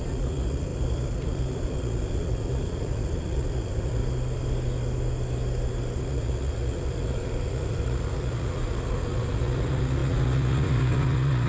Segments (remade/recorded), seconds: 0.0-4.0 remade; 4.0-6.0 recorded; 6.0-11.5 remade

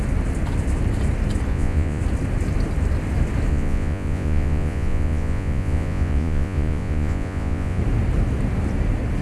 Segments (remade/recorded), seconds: 0.0-1.5 recorded; 1.5-2.0 remade; 2.0-3.5 recorded; 3.5-7.8 remade; 7.8-9.2 recorded

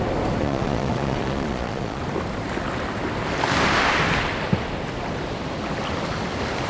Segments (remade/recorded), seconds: 0.0-0.4 recorded; 0.4-2.0 remade; 2.0-6.7 recorded

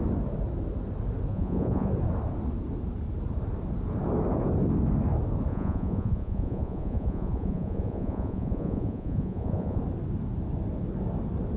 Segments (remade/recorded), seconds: 0.0-1.3 recorded; 1.3-1.9 remade; 1.9-5.5 recorded; 5.5-9.8 remade; 9.8-11.6 recorded

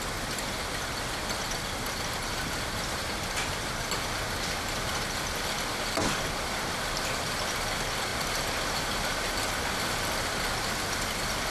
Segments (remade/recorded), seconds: 0.0-11.5 recorded